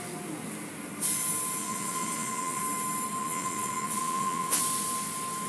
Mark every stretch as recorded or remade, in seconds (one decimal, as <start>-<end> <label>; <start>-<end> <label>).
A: 0.0-1.6 recorded; 1.6-2.6 remade; 2.6-3.2 recorded; 3.2-4.6 remade; 4.6-5.5 recorded